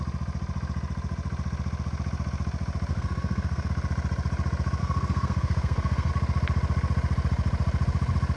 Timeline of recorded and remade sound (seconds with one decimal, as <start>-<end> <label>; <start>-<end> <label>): 0.0-2.9 recorded; 2.9-3.7 remade; 3.7-4.8 recorded; 4.8-6.1 remade; 6.1-8.4 recorded